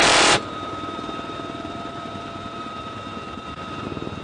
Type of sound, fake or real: fake